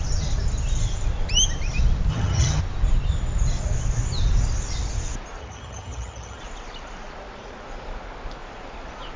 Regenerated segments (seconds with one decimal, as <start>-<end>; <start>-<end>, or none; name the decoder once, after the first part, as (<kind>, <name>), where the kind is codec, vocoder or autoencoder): 2.1-2.6 (vocoder, HiFi-GAN); 5.4-6.4